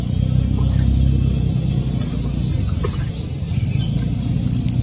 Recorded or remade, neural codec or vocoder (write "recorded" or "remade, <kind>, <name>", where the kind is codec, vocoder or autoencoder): recorded